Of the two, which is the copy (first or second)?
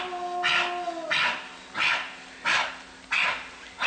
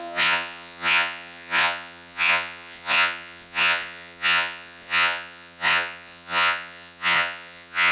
second